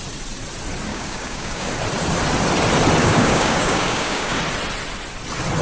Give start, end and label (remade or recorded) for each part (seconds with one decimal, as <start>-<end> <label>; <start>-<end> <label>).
0.0-0.9 recorded; 0.9-1.7 remade; 1.7-3.0 recorded; 3.0-4.4 remade; 4.4-5.6 recorded